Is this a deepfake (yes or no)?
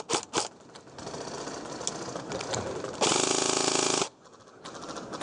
no